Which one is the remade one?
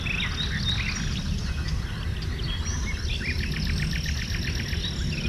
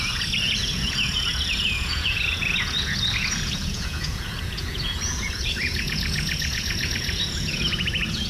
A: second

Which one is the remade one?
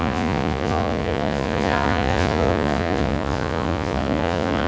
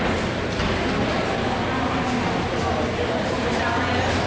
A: first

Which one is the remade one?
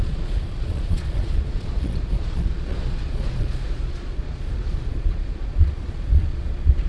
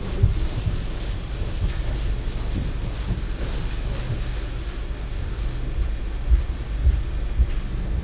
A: first